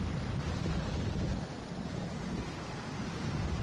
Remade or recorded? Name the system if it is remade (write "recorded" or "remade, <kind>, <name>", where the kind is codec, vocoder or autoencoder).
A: recorded